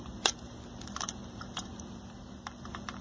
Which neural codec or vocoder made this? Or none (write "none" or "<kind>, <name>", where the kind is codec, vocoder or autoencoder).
vocoder, BigVGAN v2